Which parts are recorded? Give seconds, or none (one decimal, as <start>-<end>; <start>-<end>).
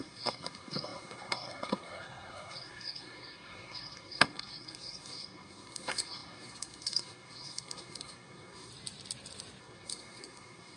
8.7-9.6